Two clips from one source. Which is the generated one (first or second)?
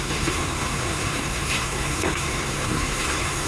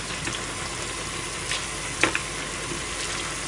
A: first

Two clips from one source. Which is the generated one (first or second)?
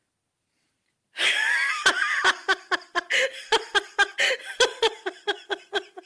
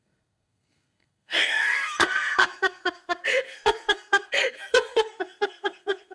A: second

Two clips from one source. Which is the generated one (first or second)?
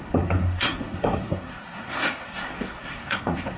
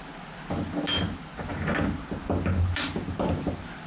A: first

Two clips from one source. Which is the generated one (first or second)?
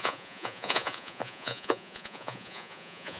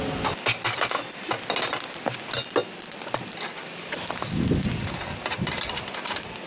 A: first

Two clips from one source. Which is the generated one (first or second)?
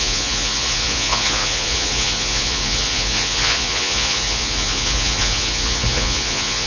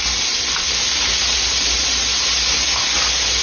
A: first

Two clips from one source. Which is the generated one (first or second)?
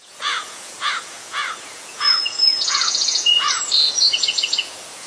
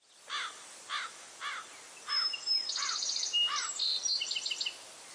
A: first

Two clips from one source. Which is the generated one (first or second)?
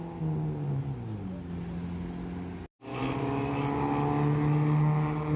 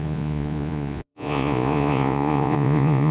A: second